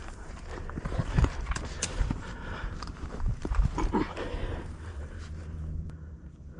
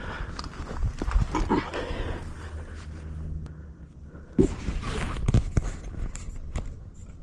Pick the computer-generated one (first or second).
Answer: first